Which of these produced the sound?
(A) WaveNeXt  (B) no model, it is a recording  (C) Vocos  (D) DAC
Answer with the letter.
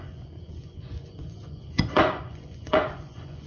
C